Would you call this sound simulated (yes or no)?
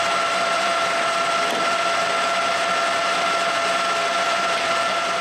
yes